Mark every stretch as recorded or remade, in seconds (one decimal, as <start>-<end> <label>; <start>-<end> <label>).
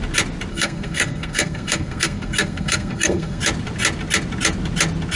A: 0.0-0.5 recorded; 0.5-3.4 remade; 3.4-5.2 recorded